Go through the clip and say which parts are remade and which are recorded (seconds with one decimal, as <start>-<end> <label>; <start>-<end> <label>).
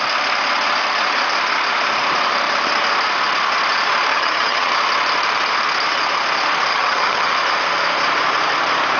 0.0-4.1 recorded; 4.1-4.7 remade; 4.7-6.7 recorded; 6.7-7.3 remade; 7.3-9.0 recorded